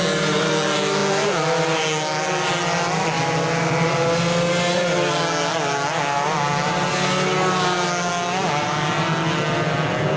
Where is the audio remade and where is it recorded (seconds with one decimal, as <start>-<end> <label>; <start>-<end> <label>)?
0.0-10.2 recorded